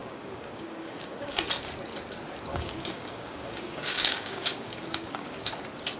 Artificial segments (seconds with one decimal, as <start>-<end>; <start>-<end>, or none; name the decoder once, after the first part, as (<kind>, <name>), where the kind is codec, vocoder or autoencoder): 0.0-1.4 (codec, DAC); 2.5-5.5